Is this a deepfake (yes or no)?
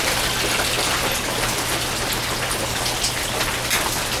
no